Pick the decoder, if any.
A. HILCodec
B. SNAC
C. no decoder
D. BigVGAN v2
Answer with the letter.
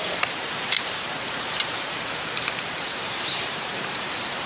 D